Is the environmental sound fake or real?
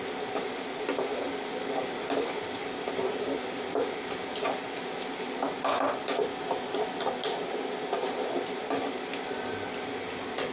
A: real